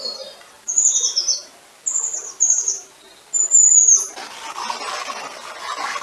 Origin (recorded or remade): recorded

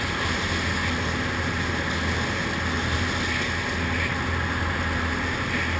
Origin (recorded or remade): recorded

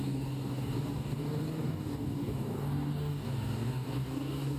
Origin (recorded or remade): remade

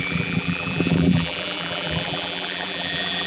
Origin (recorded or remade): remade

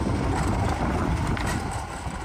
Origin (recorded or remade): recorded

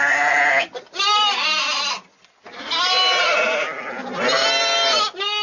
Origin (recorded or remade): recorded